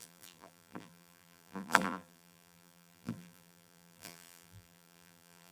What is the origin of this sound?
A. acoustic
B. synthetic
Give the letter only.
B